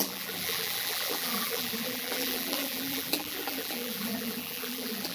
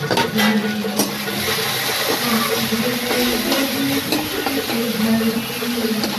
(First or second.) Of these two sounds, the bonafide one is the second